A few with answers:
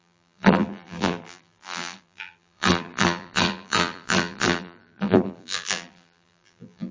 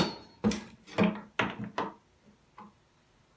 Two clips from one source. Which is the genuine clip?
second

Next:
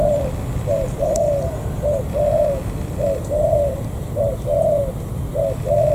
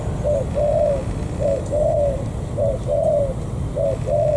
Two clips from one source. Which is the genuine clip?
second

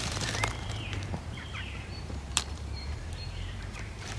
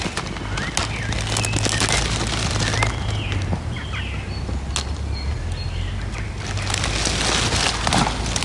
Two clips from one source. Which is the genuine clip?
second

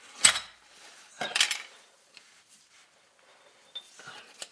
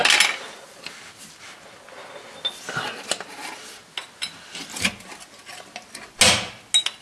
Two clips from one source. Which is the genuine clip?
second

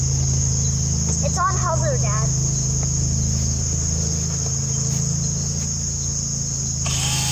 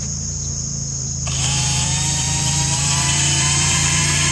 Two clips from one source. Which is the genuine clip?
first